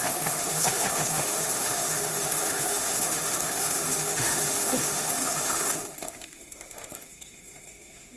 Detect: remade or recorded remade